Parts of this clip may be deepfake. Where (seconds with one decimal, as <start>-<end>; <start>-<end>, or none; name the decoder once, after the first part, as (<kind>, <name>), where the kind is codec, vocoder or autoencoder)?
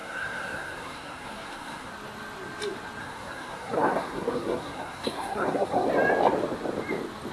0.0-1.9 (codec, SNAC); 3.0-5.9